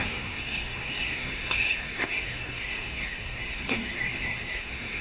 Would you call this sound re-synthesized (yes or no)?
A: yes